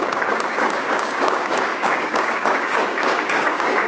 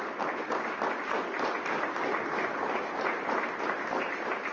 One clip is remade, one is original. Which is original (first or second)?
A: second